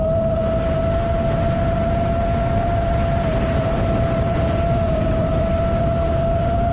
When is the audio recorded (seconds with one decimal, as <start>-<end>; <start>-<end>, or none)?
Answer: 0.0-3.3; 5.3-6.7